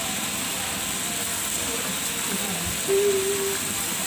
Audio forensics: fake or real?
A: real